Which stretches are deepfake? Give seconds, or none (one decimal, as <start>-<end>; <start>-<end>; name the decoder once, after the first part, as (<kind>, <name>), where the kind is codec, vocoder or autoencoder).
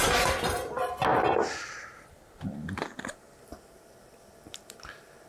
none